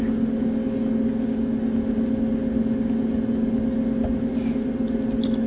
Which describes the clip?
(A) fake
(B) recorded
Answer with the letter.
B